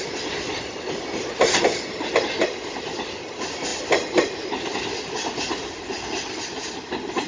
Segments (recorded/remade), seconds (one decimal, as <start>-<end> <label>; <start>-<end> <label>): 0.0-7.3 recorded

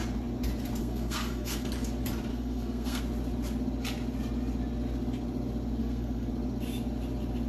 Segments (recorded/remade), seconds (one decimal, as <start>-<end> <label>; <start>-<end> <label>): 0.0-0.8 recorded; 0.8-1.7 remade; 1.7-2.3 recorded; 2.3-3.0 remade; 3.0-5.8 recorded; 5.8-6.3 remade; 6.3-7.5 recorded

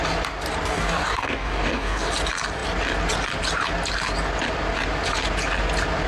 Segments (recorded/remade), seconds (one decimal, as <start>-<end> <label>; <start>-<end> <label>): 0.0-0.7 recorded; 0.7-2.1 remade; 2.1-6.1 recorded

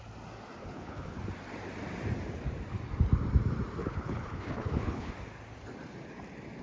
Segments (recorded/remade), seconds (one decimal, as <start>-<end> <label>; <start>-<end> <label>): 0.0-0.6 recorded; 0.6-1.2 remade; 1.2-3.8 recorded; 3.8-5.1 remade; 5.1-6.6 recorded

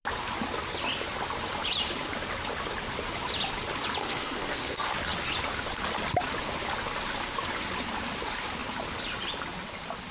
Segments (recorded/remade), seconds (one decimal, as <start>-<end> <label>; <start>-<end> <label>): 0.0-4.0 recorded; 4.0-4.9 remade; 4.9-10.1 recorded

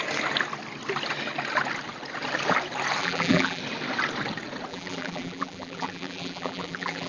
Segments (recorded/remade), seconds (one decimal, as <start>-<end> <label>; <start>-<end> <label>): 0.0-3.0 recorded; 3.0-3.6 remade; 3.6-4.7 recorded; 4.7-7.1 remade

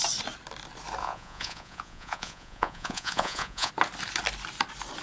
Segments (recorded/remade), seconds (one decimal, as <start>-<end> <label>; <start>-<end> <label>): 0.0-1.0 recorded; 1.0-3.7 remade; 3.7-5.0 recorded

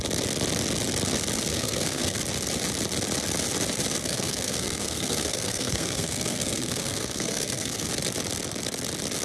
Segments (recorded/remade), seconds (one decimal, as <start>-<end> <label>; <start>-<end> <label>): 0.0-1.5 recorded; 1.5-2.2 remade; 2.2-4.0 recorded; 4.0-7.9 remade; 7.9-9.2 recorded